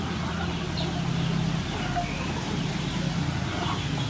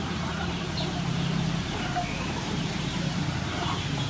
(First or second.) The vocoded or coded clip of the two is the second